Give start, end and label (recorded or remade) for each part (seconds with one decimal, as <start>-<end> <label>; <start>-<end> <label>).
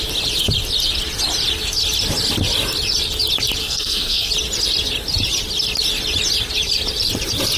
0.0-3.6 recorded; 3.6-4.3 remade; 4.3-7.6 recorded